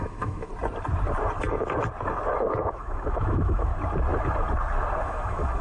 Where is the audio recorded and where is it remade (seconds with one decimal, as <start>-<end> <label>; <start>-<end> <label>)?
0.0-0.5 remade; 0.5-2.7 recorded; 2.7-3.7 remade; 3.7-5.0 recorded; 5.0-5.6 remade